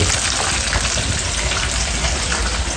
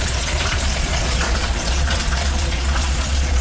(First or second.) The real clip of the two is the first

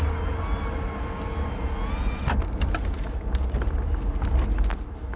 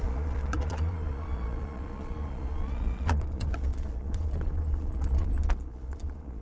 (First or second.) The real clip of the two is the first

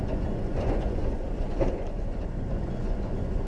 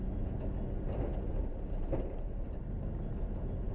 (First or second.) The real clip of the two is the second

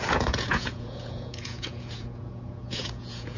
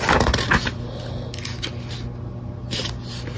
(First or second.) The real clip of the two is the second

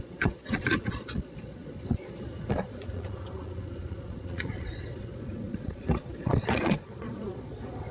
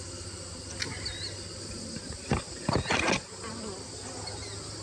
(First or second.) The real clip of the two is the second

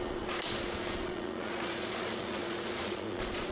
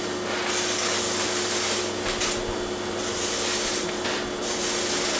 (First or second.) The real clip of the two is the second